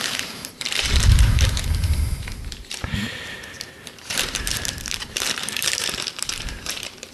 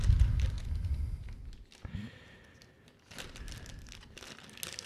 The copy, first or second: first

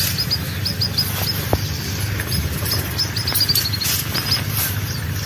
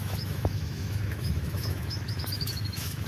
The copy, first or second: second